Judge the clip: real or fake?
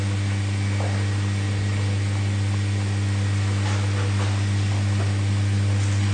real